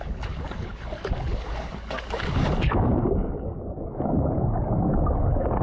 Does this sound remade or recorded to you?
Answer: remade